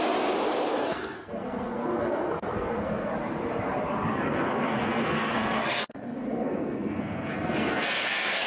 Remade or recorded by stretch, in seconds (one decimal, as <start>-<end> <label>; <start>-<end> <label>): 0.0-0.7 recorded; 0.7-3.1 remade; 3.1-4.1 recorded; 4.1-8.5 remade